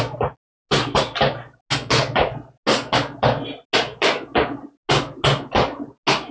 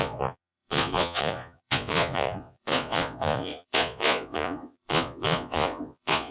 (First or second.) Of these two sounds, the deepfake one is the second